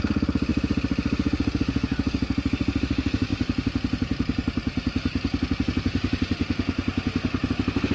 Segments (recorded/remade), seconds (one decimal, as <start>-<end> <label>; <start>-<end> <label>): 0.0-7.9 recorded